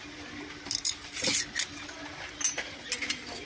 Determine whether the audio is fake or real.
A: real